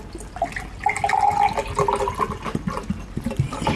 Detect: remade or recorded recorded